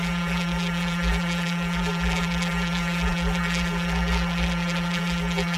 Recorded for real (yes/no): no